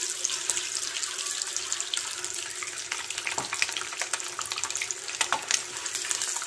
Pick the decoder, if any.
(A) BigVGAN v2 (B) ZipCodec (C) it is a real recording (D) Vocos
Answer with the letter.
C